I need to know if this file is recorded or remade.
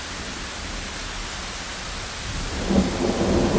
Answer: recorded